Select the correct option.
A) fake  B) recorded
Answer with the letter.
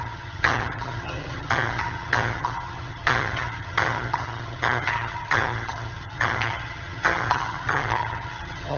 A